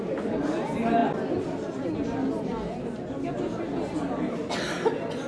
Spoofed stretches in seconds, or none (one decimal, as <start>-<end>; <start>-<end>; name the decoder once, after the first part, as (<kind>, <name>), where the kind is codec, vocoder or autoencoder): none